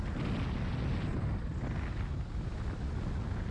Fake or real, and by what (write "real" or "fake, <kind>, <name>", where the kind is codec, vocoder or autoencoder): real